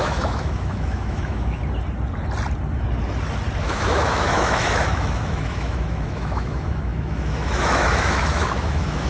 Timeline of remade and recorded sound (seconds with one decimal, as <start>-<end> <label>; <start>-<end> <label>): 0.0-1.6 remade; 1.6-3.6 recorded; 3.6-9.1 remade